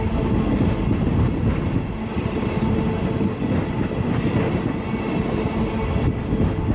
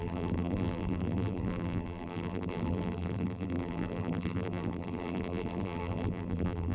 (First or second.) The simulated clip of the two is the second